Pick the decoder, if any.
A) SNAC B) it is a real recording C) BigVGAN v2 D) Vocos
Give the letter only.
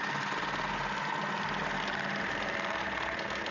B